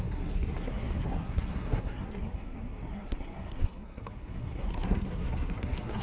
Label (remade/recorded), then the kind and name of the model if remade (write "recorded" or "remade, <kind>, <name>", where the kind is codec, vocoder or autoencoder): remade, codec, SNAC